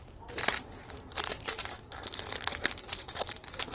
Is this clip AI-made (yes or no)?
yes